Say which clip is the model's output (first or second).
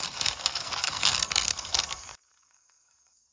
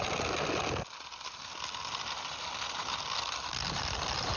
first